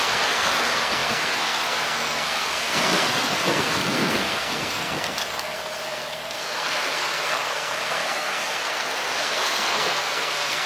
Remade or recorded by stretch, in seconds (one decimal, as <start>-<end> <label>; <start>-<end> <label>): 0.0-10.7 remade